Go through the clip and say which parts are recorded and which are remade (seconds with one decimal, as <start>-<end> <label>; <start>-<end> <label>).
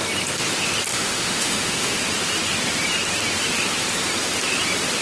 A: 0.0-0.9 recorded; 0.9-2.0 remade; 2.0-5.0 recorded